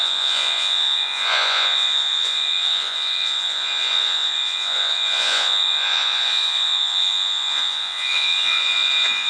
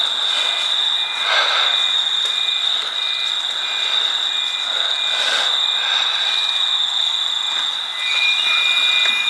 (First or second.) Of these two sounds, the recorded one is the second